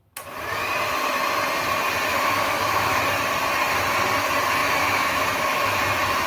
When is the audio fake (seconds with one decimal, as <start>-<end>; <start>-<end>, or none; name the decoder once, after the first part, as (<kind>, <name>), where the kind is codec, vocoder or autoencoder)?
2.1-3.0 (autoencoder, DAC-VAE); 4.6-5.8